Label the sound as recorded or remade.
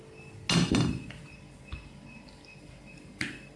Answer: recorded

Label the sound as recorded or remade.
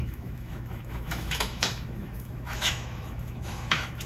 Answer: remade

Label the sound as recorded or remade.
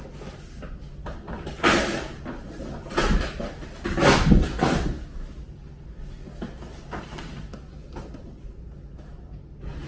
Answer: recorded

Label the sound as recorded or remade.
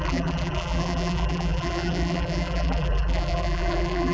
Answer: remade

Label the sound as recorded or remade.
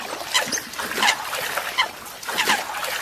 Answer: recorded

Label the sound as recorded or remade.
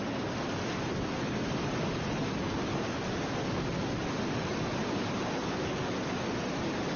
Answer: recorded